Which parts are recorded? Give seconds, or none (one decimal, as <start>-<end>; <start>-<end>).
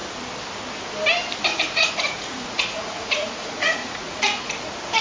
0.0-1.5; 4.5-5.0